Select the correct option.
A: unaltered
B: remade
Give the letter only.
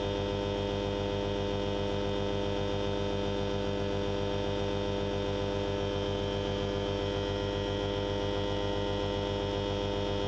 A